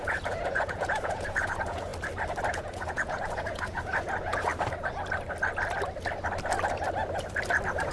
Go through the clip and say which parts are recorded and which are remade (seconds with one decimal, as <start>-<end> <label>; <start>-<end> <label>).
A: 0.0-1.9 remade; 1.9-2.5 recorded; 2.5-4.5 remade; 4.5-7.9 recorded